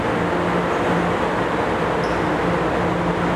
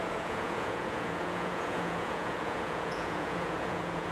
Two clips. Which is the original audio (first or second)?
first